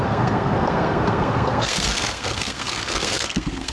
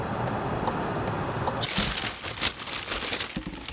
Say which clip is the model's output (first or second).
first